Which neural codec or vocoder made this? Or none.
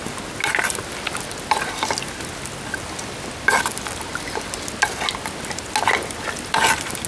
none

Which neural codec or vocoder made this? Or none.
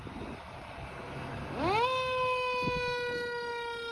none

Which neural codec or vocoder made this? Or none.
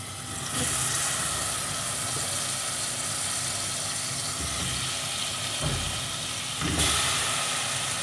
none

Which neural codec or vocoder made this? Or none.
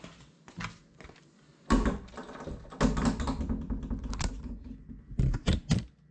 none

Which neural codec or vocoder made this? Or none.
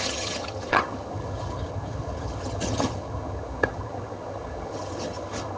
vocoder, HiFi-GAN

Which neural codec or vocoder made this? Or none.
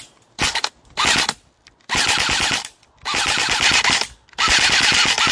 none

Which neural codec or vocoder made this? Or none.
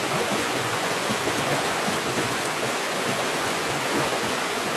vocoder, Vocos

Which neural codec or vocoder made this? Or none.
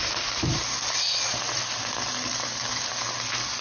none